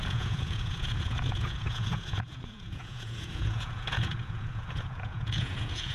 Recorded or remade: remade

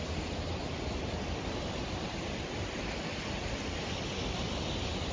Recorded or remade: recorded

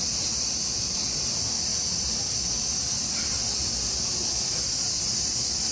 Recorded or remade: recorded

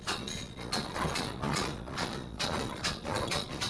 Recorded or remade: remade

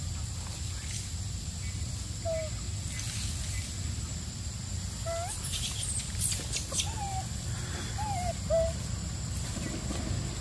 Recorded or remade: recorded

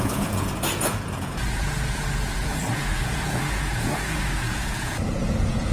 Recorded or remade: remade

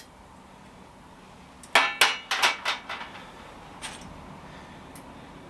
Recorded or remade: recorded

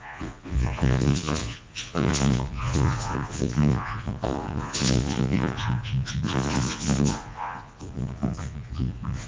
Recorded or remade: remade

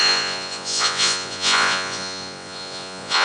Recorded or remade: remade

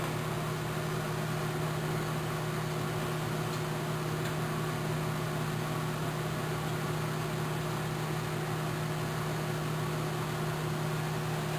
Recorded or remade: recorded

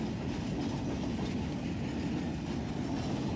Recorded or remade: recorded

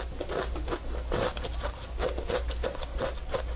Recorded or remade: recorded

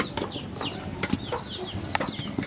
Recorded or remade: recorded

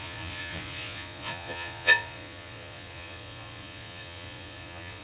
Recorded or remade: remade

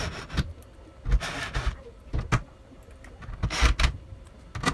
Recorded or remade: recorded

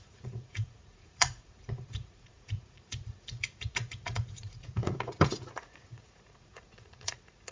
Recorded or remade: remade